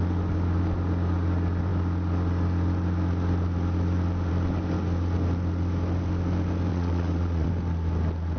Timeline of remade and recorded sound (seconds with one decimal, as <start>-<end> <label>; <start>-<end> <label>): 0.0-6.7 recorded; 6.7-7.5 remade; 7.5-8.4 recorded